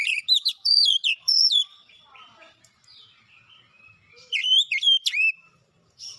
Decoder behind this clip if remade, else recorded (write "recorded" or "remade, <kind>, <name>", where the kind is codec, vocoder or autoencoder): remade, vocoder, BigVGAN v2